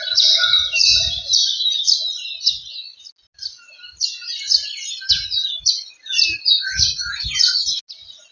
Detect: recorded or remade recorded